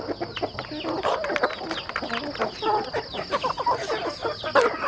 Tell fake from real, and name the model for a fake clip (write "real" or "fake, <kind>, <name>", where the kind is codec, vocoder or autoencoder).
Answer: real